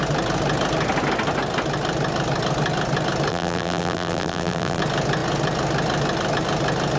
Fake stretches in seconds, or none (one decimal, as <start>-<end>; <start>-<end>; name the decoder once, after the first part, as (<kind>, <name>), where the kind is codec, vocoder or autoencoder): 3.3-4.8 (vocoder, BigVGAN v2)